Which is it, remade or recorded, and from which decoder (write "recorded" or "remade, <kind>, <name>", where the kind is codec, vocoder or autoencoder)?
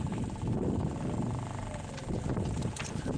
recorded